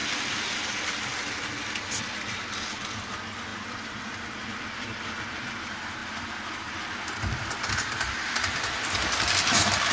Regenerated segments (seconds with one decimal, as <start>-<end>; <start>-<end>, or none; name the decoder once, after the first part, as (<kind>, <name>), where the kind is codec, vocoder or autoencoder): 3.5-4.0 (vocoder, BigVGAN v2)